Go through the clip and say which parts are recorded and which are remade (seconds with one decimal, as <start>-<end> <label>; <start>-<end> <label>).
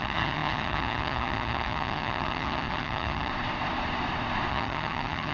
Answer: 0.0-3.3 remade; 3.3-4.5 recorded; 4.5-5.3 remade